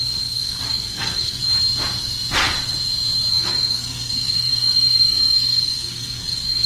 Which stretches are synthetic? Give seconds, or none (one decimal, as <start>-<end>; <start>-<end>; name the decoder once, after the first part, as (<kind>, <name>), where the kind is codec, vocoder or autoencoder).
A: 0.0-1.4 (codec, SNAC); 3.3-6.7